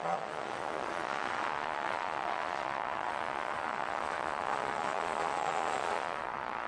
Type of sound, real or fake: fake